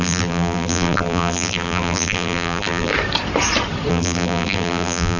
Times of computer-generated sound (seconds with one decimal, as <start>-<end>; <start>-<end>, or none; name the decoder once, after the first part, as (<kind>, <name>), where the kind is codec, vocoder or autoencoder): 0.0-2.9 (vocoder, BigVGAN v2); 3.9-5.2